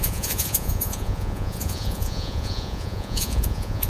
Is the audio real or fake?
fake